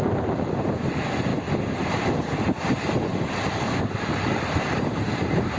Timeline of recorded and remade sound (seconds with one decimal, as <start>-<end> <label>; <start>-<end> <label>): 0.0-1.3 remade; 1.3-1.9 recorded; 1.9-5.6 remade